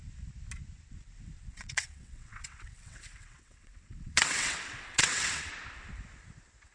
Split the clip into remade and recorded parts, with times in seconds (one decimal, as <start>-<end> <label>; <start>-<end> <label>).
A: 0.0-1.5 recorded; 1.5-5.5 remade; 5.5-6.7 recorded